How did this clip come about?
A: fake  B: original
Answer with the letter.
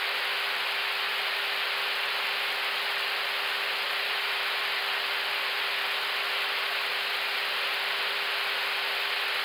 B